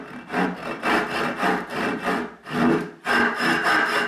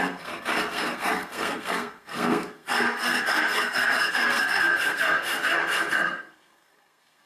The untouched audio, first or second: first